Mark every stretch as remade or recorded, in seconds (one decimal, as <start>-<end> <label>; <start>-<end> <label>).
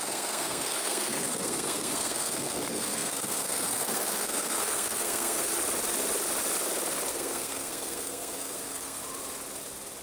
0.0-5.5 remade; 5.5-7.1 recorded; 7.1-9.0 remade; 9.0-10.0 recorded